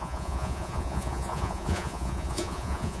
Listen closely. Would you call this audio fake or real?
fake